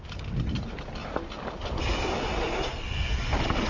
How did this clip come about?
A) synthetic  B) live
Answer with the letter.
B